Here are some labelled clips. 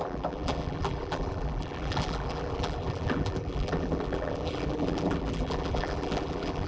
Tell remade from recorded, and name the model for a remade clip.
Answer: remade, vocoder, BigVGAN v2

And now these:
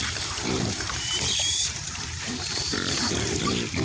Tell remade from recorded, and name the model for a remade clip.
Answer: remade, vocoder, BigVGAN v2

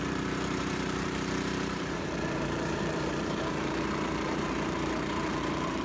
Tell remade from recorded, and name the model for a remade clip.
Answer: remade, vocoder, BigVGAN v2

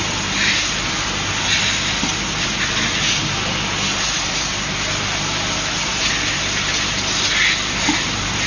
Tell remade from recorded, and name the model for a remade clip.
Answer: recorded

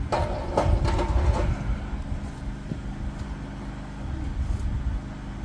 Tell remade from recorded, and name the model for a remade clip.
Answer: recorded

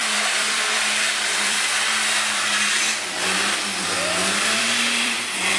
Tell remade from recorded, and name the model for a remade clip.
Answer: remade, vocoder, BigVGAN v2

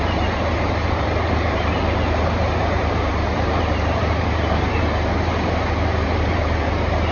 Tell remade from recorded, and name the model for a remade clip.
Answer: remade, vocoder, BigVGAN v2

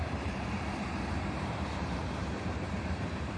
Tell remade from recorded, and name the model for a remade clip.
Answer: remade, vocoder, BigVGAN v2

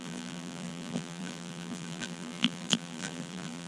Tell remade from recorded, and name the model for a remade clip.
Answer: remade, vocoder, BigVGAN v2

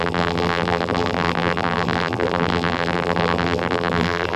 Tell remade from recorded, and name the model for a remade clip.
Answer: remade, vocoder, BigVGAN v2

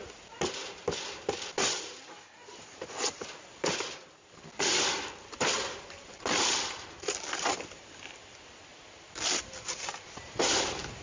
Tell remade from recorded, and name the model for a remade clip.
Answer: remade, vocoder, BigVGAN v2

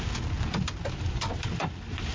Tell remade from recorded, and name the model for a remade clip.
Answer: recorded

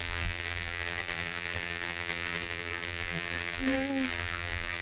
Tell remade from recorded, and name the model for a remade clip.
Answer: remade, vocoder, BigVGAN v2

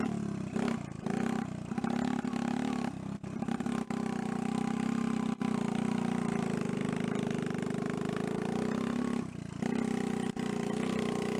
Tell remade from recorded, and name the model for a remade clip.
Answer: recorded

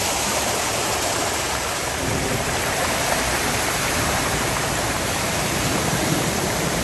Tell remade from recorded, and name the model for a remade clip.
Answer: remade, vocoder, BigVGAN v2